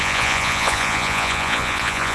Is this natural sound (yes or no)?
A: no